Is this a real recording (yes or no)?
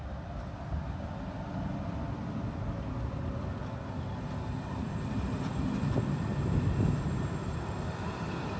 yes